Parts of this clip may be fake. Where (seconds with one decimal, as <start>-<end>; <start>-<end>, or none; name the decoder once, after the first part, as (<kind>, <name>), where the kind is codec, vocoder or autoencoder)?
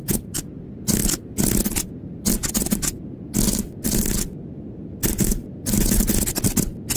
none